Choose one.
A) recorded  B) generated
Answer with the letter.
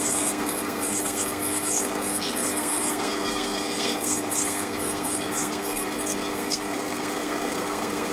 B